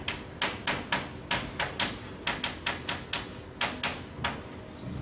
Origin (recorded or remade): recorded